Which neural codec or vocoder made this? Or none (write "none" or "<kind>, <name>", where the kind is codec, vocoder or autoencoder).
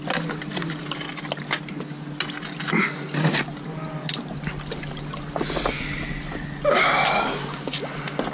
none